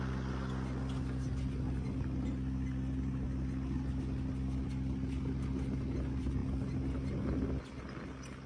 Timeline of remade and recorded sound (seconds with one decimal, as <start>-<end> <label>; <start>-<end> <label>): 0.0-8.5 recorded